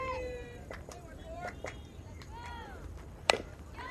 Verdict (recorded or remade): remade